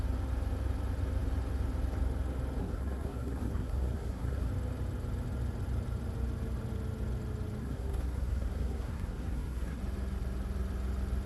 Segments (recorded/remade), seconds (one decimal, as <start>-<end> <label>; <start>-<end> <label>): 0.0-2.6 recorded; 2.6-4.5 remade; 4.5-7.6 recorded; 7.6-9.8 remade; 9.8-11.3 recorded